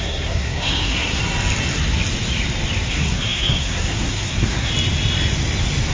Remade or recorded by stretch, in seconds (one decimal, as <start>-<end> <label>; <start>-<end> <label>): 0.0-1.2 remade; 1.2-2.9 recorded; 2.9-4.7 remade; 4.7-5.9 recorded